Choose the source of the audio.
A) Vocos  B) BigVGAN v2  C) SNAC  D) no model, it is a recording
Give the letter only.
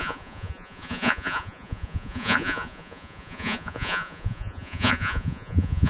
A